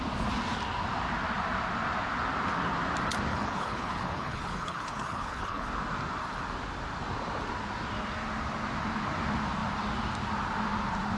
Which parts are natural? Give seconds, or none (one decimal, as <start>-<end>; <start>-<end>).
0.0-3.3; 5.7-11.2